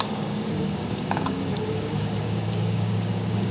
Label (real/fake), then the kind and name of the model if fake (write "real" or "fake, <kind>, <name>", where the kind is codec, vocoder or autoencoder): fake, codec, DAC